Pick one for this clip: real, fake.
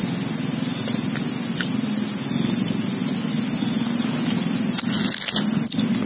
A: real